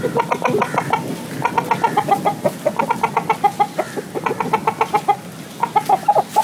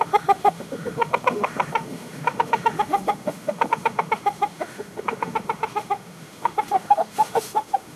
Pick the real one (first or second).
first